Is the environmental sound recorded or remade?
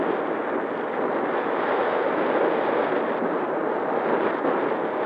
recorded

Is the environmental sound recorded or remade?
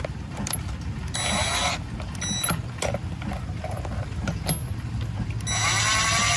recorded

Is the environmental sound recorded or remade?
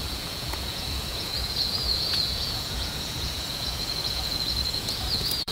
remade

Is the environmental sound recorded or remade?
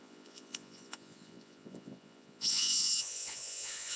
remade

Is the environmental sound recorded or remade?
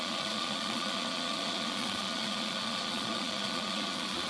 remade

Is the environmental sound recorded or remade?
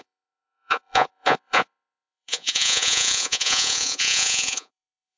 remade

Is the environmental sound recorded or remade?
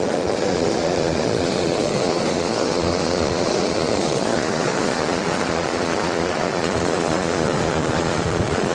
remade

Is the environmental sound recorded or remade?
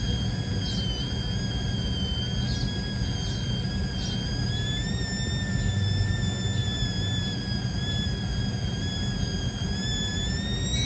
recorded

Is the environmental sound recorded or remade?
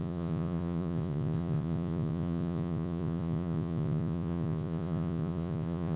remade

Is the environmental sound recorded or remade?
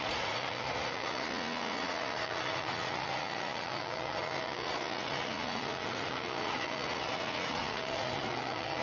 remade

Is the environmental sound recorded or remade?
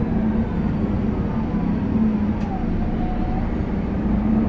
recorded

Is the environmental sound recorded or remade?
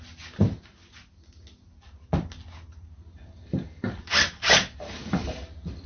recorded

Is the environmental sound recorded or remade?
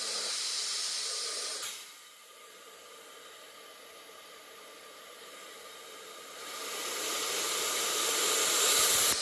recorded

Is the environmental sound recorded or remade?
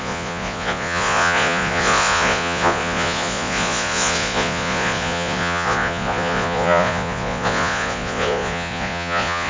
remade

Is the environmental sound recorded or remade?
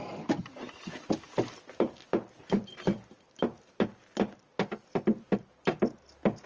recorded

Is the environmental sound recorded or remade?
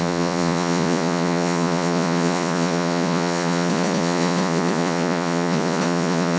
remade